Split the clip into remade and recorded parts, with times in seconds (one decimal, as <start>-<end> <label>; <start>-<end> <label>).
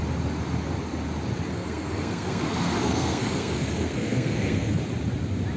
0.0-1.5 recorded; 1.5-4.8 remade; 4.8-5.6 recorded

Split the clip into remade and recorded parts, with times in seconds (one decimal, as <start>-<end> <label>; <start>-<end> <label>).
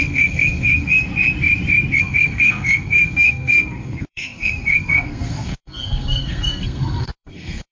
0.0-1.1 remade; 1.1-2.0 recorded; 2.0-7.7 remade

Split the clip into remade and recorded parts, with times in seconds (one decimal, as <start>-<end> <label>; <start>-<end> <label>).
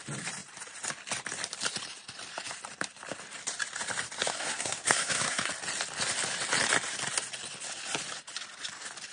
0.0-4.3 recorded; 4.3-5.5 remade; 5.5-9.1 recorded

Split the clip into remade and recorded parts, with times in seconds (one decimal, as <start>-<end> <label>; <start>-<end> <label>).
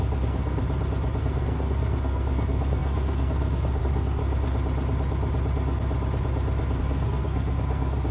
0.0-0.6 remade; 0.6-1.2 recorded; 1.2-4.2 remade; 4.2-6.8 recorded; 6.8-8.1 remade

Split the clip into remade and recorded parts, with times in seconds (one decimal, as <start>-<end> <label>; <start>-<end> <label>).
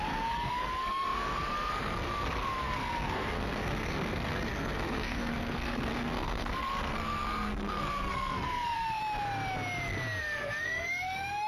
0.0-9.0 remade; 9.0-10.2 recorded; 10.2-11.5 remade